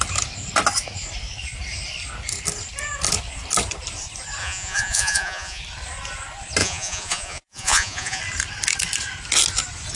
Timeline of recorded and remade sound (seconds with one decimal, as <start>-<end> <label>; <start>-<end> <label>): 0.0-4.4 recorded; 4.4-5.6 remade; 5.6-6.6 recorded; 6.6-8.2 remade; 8.2-10.0 recorded